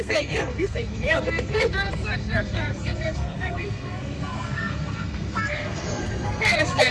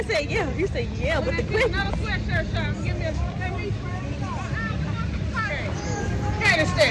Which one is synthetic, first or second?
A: first